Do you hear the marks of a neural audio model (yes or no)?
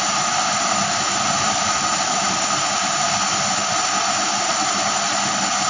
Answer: no